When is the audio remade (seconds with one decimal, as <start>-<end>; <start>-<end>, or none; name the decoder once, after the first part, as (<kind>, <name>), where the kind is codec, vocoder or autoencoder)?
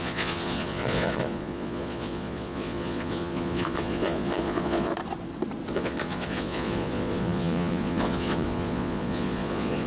0.0-4.9 (vocoder, Vocos); 5.7-9.9